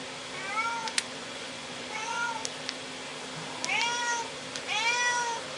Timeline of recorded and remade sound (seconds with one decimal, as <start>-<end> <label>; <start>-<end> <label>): 0.0-0.8 recorded; 0.8-2.3 remade; 2.3-5.6 recorded